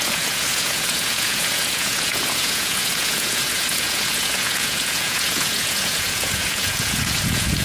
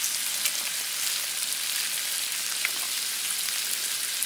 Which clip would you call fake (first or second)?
first